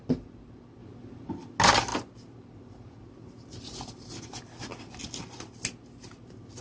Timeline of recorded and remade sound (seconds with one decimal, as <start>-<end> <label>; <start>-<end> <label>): 0.0-6.6 recorded